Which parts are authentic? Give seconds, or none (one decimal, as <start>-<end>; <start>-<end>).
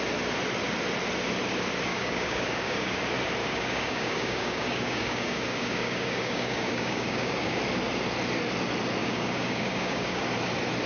0.0-1.9; 3.0-3.4; 7.6-9.0; 10.2-10.9